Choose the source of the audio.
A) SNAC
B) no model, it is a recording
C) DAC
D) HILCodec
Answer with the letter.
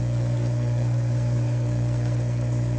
A